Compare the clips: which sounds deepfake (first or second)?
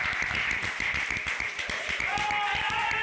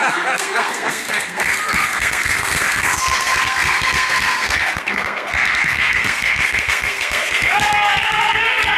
second